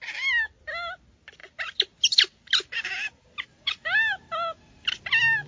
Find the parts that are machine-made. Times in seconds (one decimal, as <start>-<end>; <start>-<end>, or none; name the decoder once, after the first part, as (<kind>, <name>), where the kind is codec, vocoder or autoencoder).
none